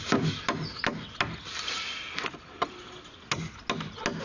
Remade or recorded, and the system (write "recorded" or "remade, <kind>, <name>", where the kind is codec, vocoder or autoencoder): recorded